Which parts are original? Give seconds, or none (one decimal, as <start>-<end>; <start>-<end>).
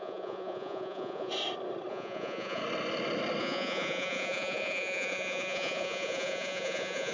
1.3-1.9; 2.6-3.4